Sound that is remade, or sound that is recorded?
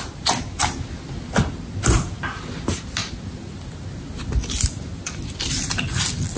recorded